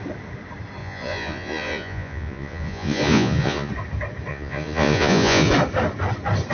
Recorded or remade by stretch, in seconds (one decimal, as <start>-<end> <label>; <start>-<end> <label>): 0.0-0.8 recorded; 0.8-3.7 remade; 3.7-4.3 recorded; 4.3-5.5 remade; 5.5-6.5 recorded